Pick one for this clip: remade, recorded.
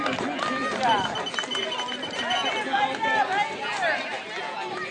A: recorded